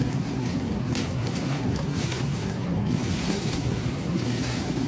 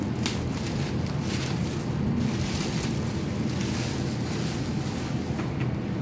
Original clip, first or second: second